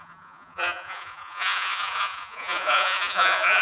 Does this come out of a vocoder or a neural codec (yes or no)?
yes